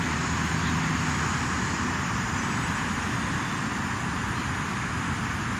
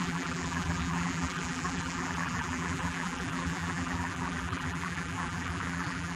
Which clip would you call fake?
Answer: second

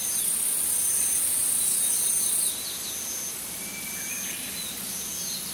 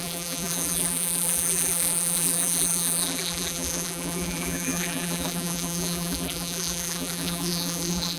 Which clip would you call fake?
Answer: second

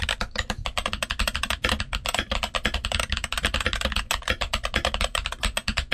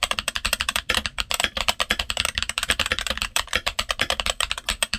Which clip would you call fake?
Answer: second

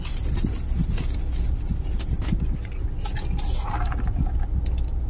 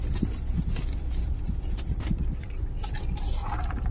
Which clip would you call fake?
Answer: second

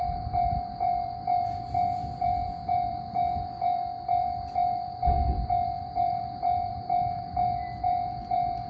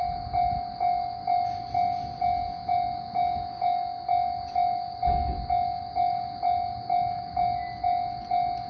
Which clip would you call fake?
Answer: first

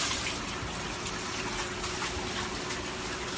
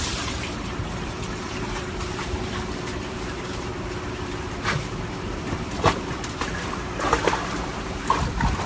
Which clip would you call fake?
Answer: second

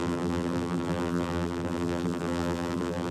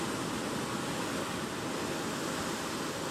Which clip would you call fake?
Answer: first